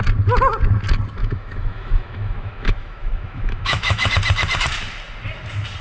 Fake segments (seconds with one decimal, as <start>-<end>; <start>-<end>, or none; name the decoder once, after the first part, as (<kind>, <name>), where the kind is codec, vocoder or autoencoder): 1.2-4.1 (autoencoder, DAC-VAE)